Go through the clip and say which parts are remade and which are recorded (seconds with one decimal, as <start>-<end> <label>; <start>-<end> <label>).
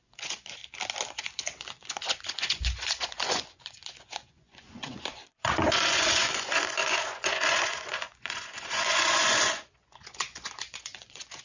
0.0-0.6 remade; 0.6-1.1 recorded; 1.1-11.4 remade